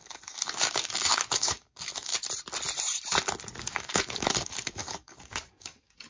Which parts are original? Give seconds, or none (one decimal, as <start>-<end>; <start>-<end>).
2.1-3.6